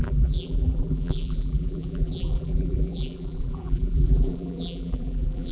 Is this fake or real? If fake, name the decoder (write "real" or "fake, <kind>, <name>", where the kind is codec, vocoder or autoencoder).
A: fake, vocoder, BigVGAN v2